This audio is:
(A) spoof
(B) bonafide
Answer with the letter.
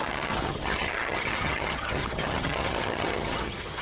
A